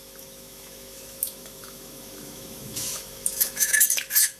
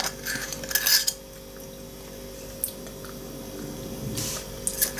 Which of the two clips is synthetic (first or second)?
first